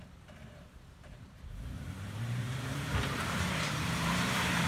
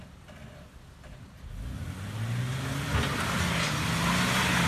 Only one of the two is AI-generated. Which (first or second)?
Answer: first